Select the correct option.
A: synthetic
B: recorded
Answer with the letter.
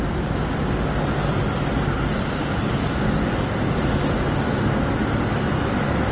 B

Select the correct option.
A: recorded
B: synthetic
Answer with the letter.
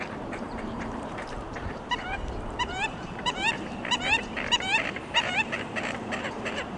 B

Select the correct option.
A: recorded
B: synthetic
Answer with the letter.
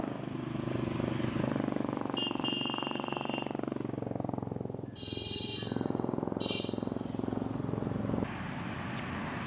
A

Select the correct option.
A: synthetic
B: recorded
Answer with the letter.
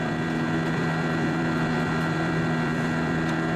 A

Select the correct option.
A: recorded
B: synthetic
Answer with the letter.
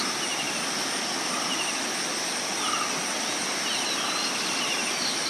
A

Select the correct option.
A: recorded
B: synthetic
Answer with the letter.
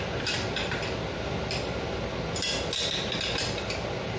A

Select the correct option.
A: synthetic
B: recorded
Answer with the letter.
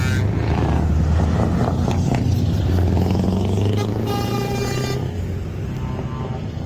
B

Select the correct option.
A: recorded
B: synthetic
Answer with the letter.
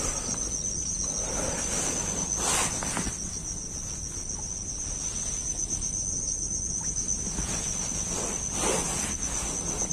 A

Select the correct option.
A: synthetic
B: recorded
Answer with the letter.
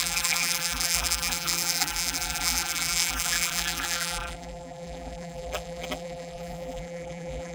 A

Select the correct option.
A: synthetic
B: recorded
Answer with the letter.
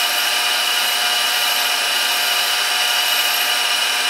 A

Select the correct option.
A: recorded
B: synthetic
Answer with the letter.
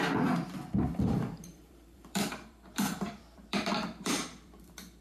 B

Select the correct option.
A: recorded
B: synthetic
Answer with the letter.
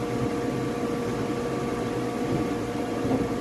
A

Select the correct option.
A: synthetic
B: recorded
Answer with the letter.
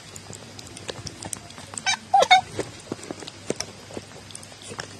B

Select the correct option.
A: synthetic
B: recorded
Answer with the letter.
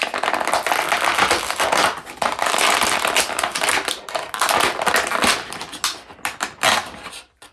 B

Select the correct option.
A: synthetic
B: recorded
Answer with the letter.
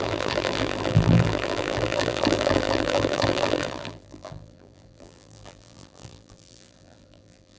A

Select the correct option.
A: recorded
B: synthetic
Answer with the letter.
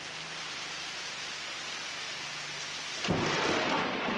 A